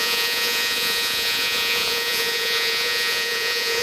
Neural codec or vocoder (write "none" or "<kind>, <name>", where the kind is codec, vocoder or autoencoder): vocoder, Vocos